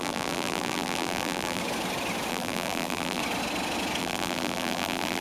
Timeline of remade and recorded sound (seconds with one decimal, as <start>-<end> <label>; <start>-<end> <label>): 0.0-1.6 remade; 1.6-2.3 recorded; 2.3-3.2 remade; 3.2-4.0 recorded; 4.0-5.2 remade